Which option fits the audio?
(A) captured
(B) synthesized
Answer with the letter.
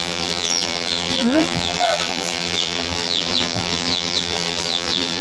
B